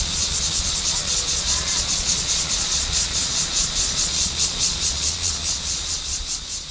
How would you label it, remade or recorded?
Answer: remade